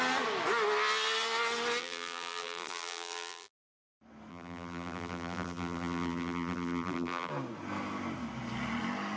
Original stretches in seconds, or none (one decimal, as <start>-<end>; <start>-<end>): 0.0-1.8; 3.7-4.3; 7.3-9.2

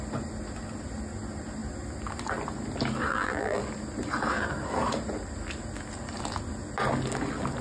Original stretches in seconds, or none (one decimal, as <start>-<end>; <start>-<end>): 0.0-3.1; 3.6-7.6

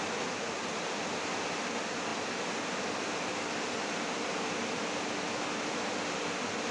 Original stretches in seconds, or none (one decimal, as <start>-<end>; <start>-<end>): 0.0-6.7

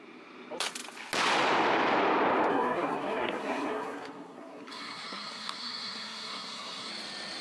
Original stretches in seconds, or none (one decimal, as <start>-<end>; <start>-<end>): 0.0-2.5; 6.9-7.4